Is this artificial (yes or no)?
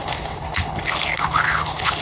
yes